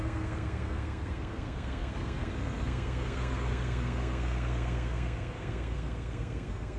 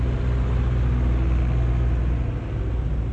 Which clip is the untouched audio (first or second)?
second